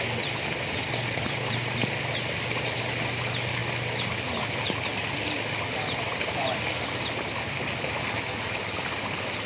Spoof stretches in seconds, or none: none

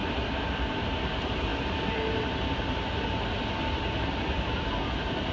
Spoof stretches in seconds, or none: none

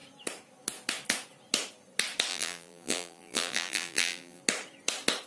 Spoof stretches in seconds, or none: 2.3-4.4 (vocoder, BigVGAN v2)

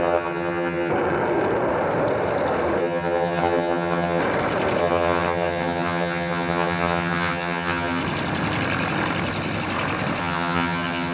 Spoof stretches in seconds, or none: 0.0-0.9 (vocoder, HiFi-GAN); 2.8-4.2; 4.8-8.0; 10.2-11.1

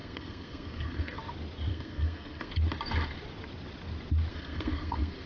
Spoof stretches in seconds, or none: 0.0-1.2 (codec, SNAC); 1.7-2.5; 4.3-5.3